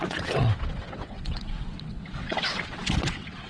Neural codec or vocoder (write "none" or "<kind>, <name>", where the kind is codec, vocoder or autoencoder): vocoder, WaveNeXt